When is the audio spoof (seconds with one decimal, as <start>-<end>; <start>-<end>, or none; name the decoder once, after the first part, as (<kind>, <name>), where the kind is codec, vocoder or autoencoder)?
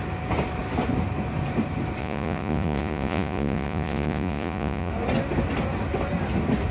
2.0-4.9 (vocoder, Vocos)